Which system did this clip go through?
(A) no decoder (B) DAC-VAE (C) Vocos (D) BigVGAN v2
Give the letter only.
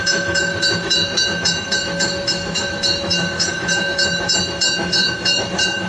B